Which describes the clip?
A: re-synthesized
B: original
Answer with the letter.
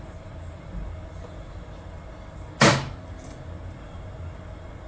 B